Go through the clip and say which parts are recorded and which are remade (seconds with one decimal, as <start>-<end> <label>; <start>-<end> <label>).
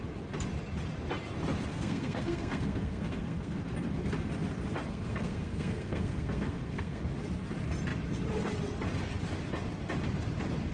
0.0-1.7 recorded; 1.7-3.6 remade; 3.6-4.9 recorded; 4.9-7.0 remade; 7.0-10.7 recorded